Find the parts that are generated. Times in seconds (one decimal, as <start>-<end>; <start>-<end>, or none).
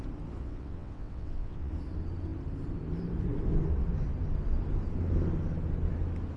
0.4-1.7